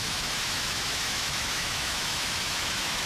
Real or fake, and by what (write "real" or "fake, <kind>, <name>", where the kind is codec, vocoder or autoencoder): fake, autoencoder, DAC-VAE